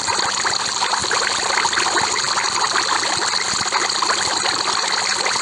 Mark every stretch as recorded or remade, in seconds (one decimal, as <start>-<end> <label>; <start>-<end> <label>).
0.0-5.4 recorded